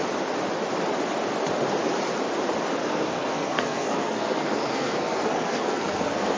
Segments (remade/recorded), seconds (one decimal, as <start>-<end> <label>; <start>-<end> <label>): 0.0-2.8 recorded; 2.8-6.4 remade